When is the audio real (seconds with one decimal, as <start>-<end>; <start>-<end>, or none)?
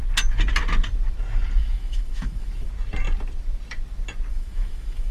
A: 0.0-1.6; 2.7-4.3